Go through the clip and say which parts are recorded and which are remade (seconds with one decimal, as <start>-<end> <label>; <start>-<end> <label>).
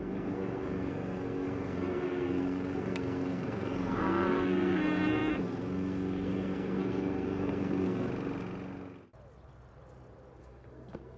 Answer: 0.0-8.1 remade; 8.1-10.4 recorded; 10.4-11.2 remade